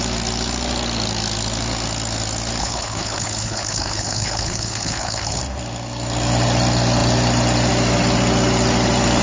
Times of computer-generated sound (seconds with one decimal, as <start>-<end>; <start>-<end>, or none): 2.6-5.4